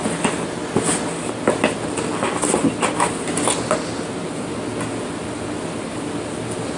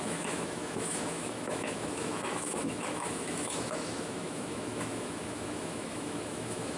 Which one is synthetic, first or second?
second